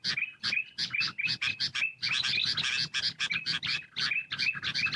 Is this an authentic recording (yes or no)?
yes